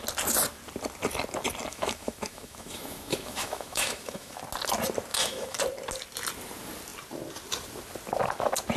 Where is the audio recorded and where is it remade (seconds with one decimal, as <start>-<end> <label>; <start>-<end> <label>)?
0.0-1.7 recorded; 1.7-4.4 remade; 4.4-5.1 recorded; 5.1-5.6 remade; 5.6-8.8 recorded